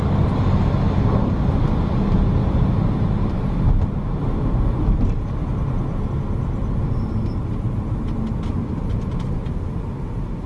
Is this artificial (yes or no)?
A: no